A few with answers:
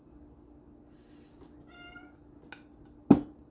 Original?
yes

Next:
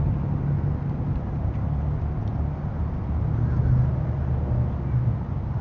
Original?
yes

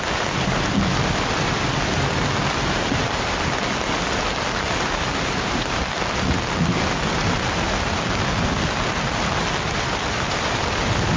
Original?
yes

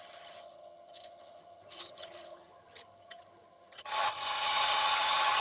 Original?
no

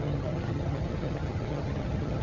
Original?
no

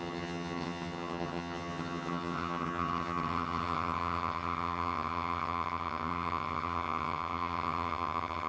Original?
no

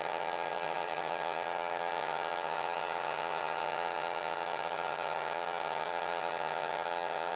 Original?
no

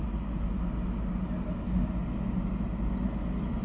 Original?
yes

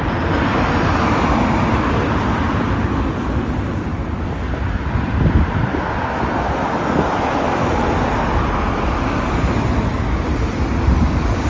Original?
yes